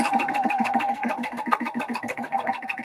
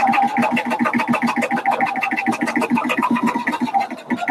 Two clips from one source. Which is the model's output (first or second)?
first